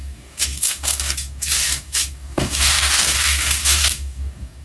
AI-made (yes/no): yes